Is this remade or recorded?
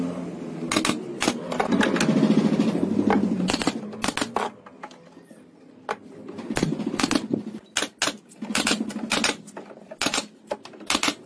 recorded